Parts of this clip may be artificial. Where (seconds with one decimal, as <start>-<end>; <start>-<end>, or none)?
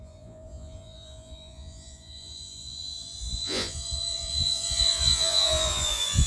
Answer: 0.0-6.3